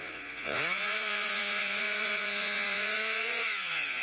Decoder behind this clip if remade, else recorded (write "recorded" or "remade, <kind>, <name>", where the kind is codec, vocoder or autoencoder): remade, vocoder, Vocos